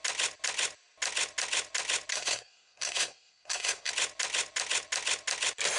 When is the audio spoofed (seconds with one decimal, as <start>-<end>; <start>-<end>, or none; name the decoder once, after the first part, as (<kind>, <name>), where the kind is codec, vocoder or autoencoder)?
2.1-3.9 (codec, SNAC)